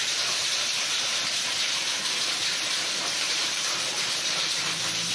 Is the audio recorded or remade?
remade